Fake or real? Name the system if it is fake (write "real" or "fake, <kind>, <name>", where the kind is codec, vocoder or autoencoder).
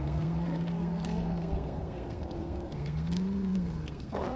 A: fake, codec, SNAC